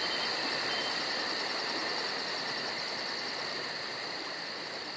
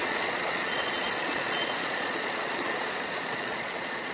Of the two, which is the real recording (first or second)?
first